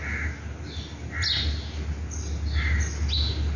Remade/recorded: recorded